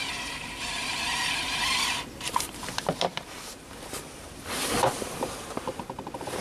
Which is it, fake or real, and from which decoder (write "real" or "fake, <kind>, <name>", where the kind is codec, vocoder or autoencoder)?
fake, vocoder, BigVGAN v2